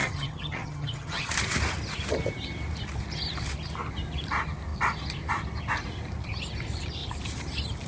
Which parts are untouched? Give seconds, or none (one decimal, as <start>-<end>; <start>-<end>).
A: 1.3-7.9